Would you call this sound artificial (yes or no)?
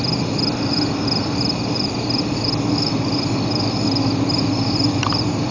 yes